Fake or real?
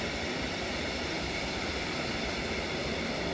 real